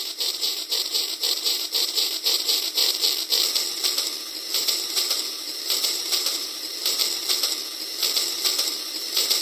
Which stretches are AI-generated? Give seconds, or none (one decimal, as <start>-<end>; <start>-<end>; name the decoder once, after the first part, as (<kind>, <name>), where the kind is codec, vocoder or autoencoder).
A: 0.0-2.8 (vocoder, BigVGAN v2); 4.5-7.0; 8.7-9.4